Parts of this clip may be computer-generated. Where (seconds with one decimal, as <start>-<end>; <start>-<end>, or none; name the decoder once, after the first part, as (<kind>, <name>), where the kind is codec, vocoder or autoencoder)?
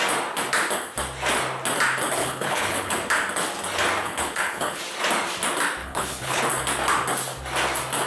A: 2.2-2.9 (codec, HILCodec); 4.0-4.8; 5.8-6.4